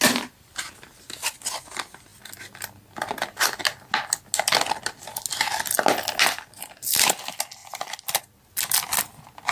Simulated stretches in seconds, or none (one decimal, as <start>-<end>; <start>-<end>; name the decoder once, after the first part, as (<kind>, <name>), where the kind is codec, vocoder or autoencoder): none